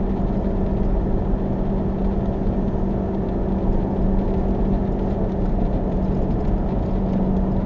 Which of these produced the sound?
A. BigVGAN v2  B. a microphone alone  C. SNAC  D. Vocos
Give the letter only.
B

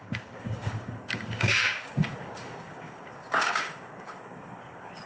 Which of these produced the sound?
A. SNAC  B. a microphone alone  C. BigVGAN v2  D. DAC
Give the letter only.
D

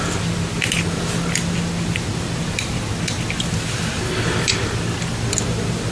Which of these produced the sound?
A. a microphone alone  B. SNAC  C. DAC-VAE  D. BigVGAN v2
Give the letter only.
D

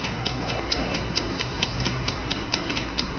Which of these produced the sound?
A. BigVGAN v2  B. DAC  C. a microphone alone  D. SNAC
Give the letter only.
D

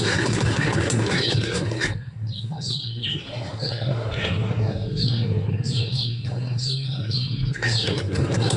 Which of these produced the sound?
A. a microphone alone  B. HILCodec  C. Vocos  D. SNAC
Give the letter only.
D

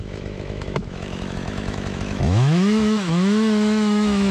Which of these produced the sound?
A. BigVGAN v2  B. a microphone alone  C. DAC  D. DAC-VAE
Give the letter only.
D